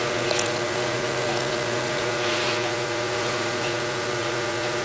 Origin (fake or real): fake